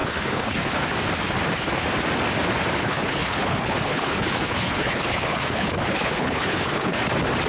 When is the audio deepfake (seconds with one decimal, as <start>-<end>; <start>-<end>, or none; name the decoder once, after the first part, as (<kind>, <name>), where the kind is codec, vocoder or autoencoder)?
0.0-0.8 (codec, HILCodec); 2.8-7.0